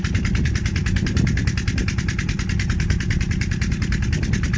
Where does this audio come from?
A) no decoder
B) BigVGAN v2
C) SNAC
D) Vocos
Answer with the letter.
A